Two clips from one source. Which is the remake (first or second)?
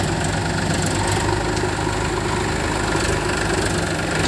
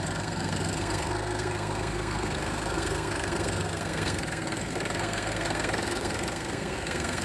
second